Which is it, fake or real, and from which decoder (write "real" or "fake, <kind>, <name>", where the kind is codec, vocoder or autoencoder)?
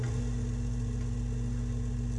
real